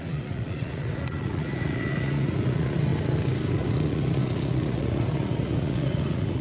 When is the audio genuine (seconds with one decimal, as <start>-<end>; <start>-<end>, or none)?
2.9-3.5